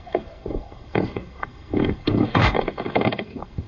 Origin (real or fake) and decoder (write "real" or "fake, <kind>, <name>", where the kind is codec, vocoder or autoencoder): fake, codec, SNAC